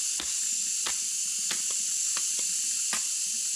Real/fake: real